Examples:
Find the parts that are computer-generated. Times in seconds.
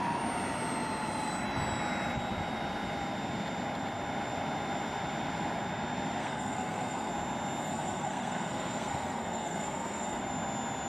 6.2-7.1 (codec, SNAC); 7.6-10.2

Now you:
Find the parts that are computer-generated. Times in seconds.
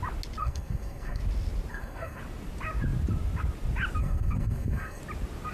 0.4-1.2 (codec, SNAC); 1.7-2.2; 4.0-5.0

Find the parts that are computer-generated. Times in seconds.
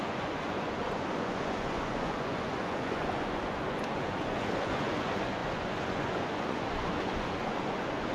0.0-8.1 (vocoder, Vocos)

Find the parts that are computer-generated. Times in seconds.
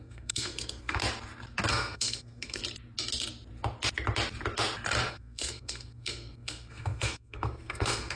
0.0-1.0 (codec, SNAC); 1.7-2.6; 5.1-8.2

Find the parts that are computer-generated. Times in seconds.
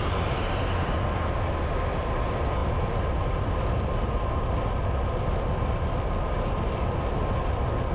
none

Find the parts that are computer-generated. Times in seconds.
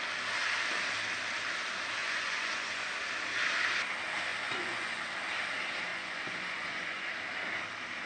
2.0-2.9 (vocoder, Vocos); 4.3-5.0; 5.9-7.1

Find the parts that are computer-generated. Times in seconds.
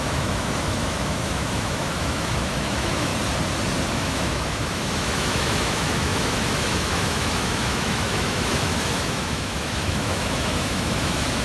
0.0-3.1 (autoencoder, DAC-VAE); 3.9-11.4